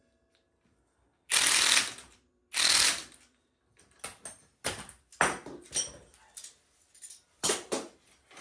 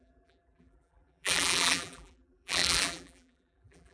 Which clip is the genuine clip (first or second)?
first